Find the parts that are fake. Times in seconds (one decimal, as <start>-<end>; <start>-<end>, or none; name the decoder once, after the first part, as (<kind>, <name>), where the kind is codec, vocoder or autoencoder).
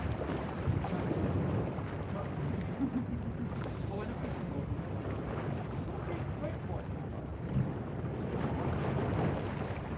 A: none